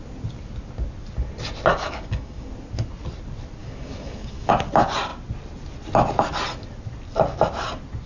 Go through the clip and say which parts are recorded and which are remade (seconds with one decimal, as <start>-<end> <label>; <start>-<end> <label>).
0.0-1.7 recorded; 1.7-2.5 remade; 2.5-3.6 recorded; 3.6-4.5 remade; 4.5-8.1 recorded